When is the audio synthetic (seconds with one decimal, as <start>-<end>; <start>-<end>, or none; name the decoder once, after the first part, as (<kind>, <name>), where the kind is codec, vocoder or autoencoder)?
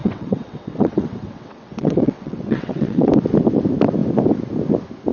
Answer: 0.0-3.1 (vocoder, WaveNeXt)